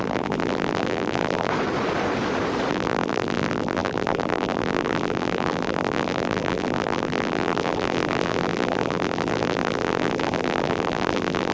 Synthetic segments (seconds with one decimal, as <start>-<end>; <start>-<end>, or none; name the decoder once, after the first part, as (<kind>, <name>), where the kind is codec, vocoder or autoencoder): 0.0-1.5 (vocoder, BigVGAN v2); 2.7-11.5